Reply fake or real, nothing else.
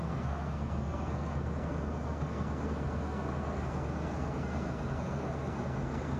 fake